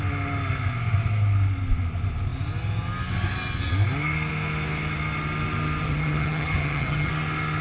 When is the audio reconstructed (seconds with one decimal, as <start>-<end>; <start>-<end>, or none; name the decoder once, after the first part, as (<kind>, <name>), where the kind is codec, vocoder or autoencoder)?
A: 5.8-7.1 (vocoder, HiFi-GAN)